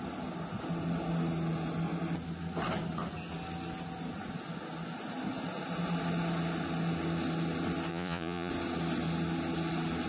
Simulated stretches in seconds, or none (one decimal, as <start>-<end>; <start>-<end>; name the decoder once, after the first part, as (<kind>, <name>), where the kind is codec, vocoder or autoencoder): 7.9-8.5 (vocoder, Vocos)